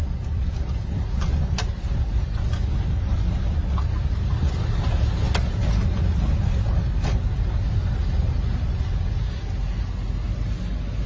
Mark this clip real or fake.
real